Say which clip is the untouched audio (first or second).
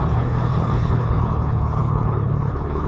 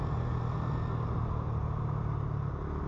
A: second